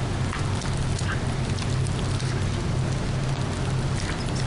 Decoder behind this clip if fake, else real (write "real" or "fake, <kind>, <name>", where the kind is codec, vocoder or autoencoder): real